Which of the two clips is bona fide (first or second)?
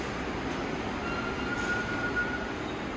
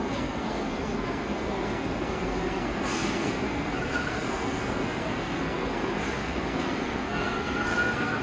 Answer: first